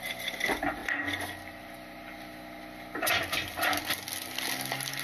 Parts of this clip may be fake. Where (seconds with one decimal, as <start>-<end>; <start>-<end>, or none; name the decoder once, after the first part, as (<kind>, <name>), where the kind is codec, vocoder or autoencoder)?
none